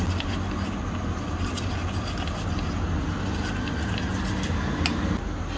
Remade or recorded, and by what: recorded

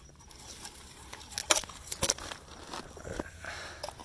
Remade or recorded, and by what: recorded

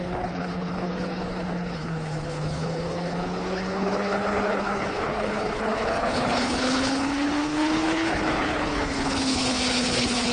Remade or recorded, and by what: remade, codec, HILCodec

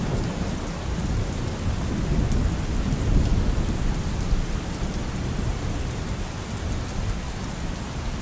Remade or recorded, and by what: recorded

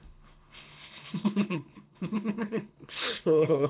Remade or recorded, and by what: remade, codec, HILCodec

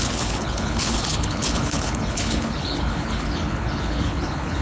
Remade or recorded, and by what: remade, codec, HILCodec